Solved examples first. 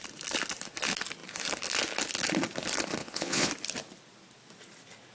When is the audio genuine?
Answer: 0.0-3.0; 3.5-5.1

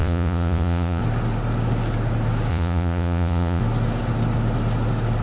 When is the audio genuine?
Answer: 1.0-2.5; 3.6-5.2

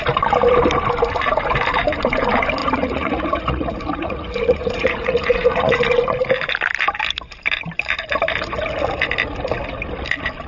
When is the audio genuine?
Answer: 0.0-2.6; 5.8-10.5